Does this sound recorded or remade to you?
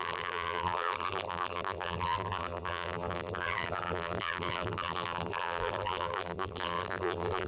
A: remade